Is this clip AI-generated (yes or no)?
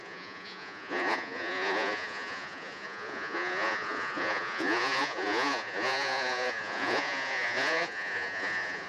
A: yes